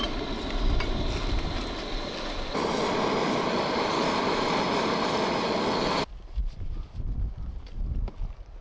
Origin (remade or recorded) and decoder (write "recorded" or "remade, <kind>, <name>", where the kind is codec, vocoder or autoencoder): recorded